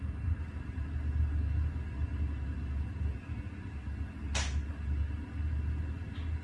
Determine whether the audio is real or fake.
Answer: real